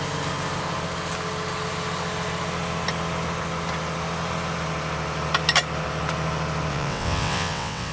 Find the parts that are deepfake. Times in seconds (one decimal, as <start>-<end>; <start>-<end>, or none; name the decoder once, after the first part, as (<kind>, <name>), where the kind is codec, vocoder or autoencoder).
6.7-7.9 (vocoder, WaveNeXt)